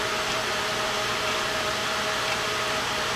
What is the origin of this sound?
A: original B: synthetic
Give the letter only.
B